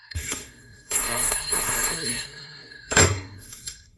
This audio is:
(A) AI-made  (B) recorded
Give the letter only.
A